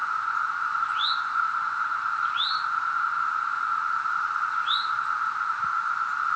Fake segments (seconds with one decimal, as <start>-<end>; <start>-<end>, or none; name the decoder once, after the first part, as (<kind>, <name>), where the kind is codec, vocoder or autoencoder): 0.0-2.2 (vocoder, Vocos)